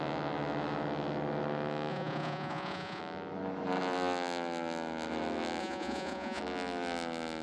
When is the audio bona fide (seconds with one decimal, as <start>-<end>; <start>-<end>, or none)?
0.0-1.9; 3.0-5.6; 6.4-7.4